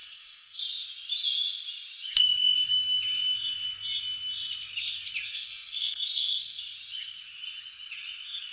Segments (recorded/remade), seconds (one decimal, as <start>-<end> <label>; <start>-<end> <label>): 0.0-0.6 remade; 0.6-5.3 recorded; 5.3-6.6 remade; 6.6-8.5 recorded